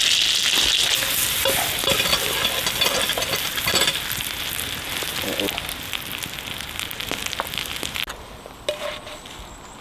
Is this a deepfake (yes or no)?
no